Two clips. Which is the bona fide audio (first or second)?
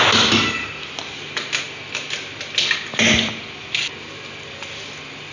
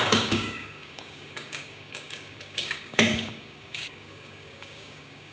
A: first